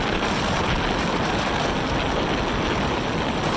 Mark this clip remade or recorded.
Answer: recorded